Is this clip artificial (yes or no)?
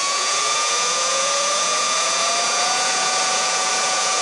yes